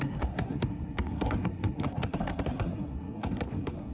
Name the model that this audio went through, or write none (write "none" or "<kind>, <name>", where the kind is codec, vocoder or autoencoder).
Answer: codec, SNAC